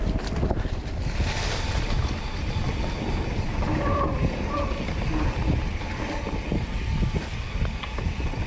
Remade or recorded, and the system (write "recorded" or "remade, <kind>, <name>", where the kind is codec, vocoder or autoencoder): recorded